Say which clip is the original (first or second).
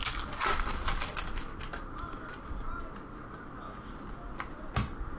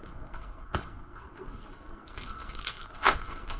first